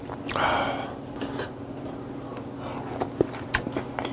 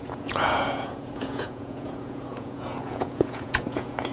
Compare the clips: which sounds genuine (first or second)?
first